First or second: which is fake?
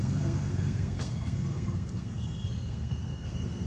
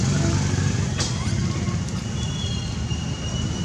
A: first